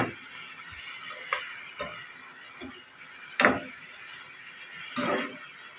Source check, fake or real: real